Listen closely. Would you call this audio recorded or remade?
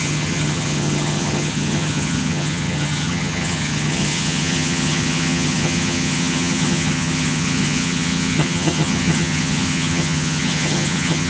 remade